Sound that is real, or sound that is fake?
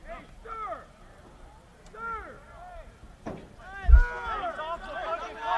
real